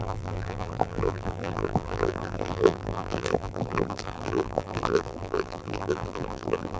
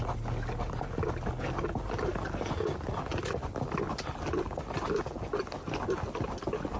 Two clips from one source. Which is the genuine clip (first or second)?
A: second